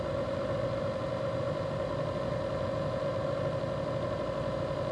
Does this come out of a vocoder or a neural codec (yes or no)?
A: no